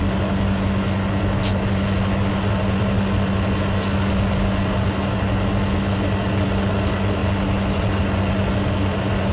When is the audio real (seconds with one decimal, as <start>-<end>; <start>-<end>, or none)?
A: 0.0-9.3